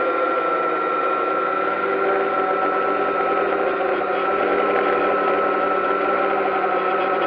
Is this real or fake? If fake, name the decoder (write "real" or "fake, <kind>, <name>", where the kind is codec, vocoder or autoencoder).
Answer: real